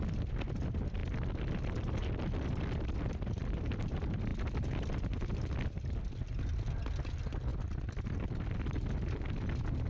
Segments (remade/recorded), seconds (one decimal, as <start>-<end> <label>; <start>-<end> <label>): 0.0-9.9 recorded